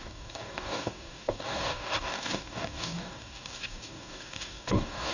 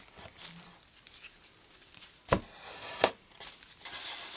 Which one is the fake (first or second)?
first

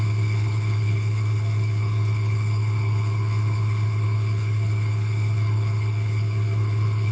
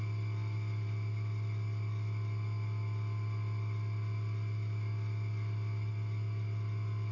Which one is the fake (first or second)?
first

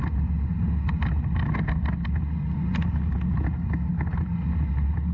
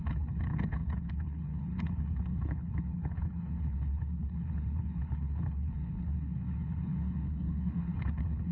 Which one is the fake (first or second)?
second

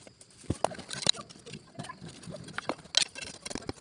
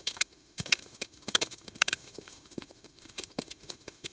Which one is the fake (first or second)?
second